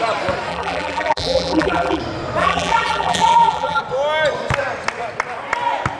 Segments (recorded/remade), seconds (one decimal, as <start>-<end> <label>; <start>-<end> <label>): 0.0-0.5 recorded; 0.5-2.0 remade; 2.0-2.4 recorded; 2.4-3.8 remade; 3.8-6.0 recorded